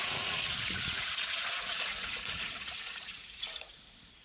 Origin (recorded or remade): remade